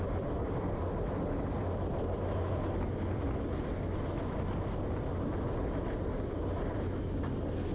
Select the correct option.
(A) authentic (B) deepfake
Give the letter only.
A